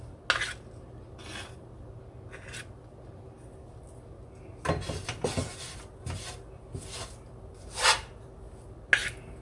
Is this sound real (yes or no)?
yes